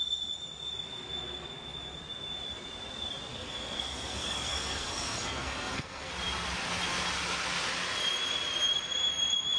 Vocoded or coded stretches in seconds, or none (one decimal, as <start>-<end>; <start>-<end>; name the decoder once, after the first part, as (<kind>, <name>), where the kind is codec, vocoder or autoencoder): 3.3-6.1 (codec, SNAC)